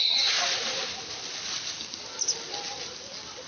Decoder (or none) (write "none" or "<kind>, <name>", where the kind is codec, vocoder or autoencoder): none